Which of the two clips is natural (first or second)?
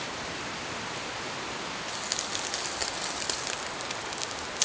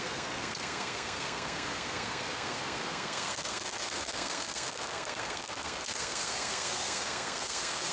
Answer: first